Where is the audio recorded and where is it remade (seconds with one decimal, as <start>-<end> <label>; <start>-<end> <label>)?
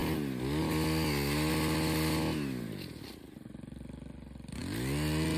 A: 0.0-5.4 recorded